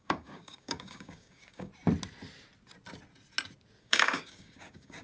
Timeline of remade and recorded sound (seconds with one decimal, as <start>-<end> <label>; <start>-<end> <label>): 0.0-1.7 remade; 1.7-3.8 recorded; 3.8-5.0 remade